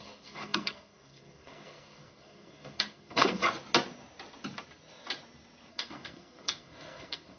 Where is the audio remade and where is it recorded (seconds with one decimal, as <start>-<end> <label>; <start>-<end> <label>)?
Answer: 0.0-3.4 remade; 3.4-5.7 recorded; 5.7-7.4 remade